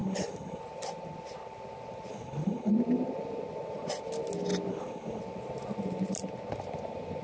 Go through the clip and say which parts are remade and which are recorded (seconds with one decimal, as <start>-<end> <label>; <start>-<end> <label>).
0.0-0.6 remade; 0.6-2.1 recorded; 2.1-2.7 remade; 2.7-4.7 recorded; 4.7-5.2 remade; 5.2-7.2 recorded